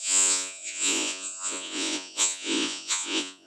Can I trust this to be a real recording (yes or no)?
no